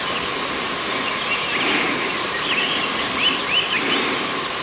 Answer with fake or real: real